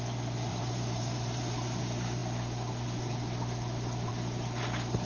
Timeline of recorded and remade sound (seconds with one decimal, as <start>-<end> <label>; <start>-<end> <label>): 0.0-0.5 recorded; 0.5-1.8 remade; 1.8-5.1 recorded